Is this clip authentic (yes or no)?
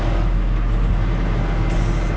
yes